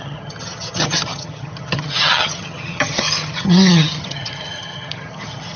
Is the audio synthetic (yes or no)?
yes